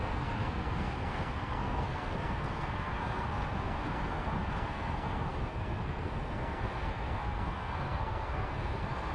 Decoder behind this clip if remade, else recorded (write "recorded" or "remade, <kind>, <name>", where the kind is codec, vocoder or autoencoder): remade, codec, SNAC